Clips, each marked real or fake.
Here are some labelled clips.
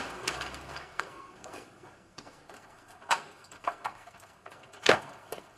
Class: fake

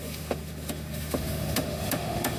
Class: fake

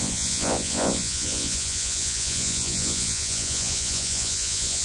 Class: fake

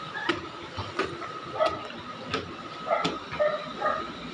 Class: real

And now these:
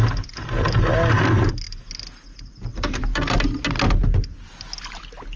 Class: real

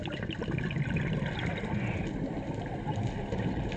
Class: real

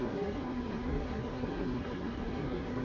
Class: fake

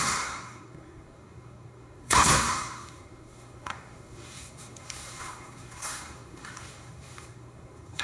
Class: fake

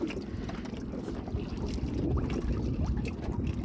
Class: real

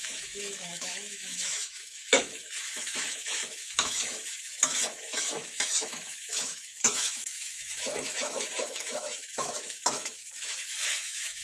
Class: fake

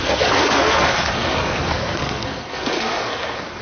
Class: fake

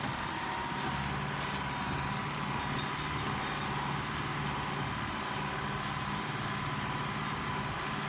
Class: real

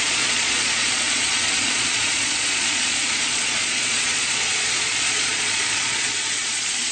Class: fake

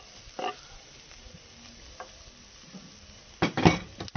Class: real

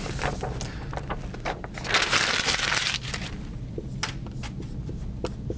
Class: real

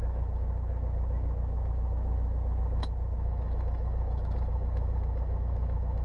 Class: fake